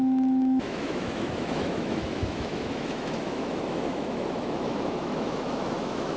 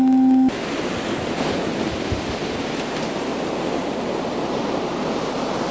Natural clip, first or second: second